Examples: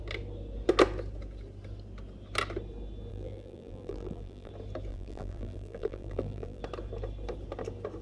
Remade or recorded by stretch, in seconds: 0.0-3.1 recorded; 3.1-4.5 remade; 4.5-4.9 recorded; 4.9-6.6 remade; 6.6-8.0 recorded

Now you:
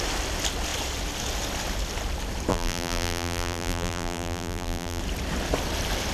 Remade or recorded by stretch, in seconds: 0.0-2.5 recorded; 2.5-5.0 remade; 5.0-6.1 recorded

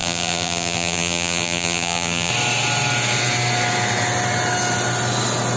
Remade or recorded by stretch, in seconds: 0.0-2.3 remade; 2.3-5.6 recorded

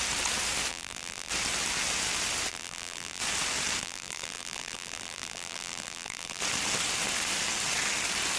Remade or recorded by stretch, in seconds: 0.0-0.7 recorded; 0.7-1.3 remade; 1.3-2.5 recorded; 2.5-3.2 remade; 3.2-3.8 recorded; 3.8-6.4 remade; 6.4-8.4 recorded

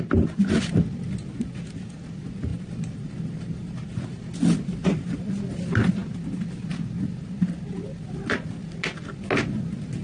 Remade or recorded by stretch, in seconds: 0.0-2.5 recorded; 2.5-4.2 remade; 4.2-4.8 recorded; 4.8-5.3 remade; 5.3-10.0 recorded

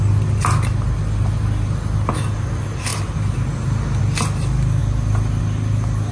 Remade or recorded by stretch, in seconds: 0.0-6.1 recorded